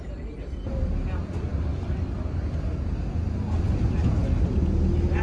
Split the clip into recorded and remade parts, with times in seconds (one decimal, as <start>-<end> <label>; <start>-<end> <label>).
0.0-5.2 recorded